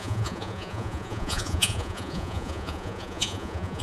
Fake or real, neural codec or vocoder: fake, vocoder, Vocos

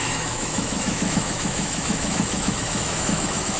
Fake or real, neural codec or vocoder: fake, autoencoder, DAC-VAE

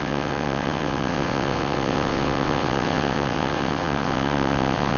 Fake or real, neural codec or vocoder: fake, vocoder, WaveNeXt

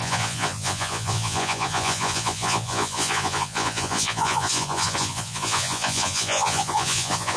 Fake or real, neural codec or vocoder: fake, vocoder, Vocos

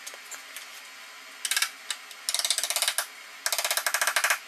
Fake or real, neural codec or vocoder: real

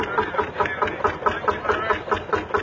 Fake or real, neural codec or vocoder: real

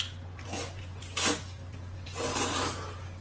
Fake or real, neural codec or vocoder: real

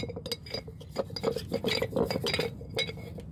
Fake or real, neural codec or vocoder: real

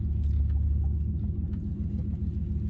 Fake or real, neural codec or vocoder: real